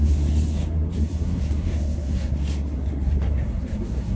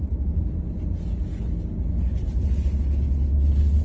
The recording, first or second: second